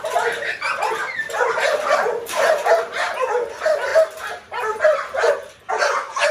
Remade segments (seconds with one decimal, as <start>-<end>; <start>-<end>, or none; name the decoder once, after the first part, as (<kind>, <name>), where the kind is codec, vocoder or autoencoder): 1.0-2.7 (vocoder, BigVGAN v2); 3.9-5.7